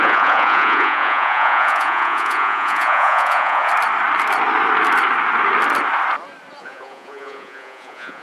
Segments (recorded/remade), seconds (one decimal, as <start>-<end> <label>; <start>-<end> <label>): 0.0-3.7 remade; 3.7-6.6 recorded; 6.6-8.2 remade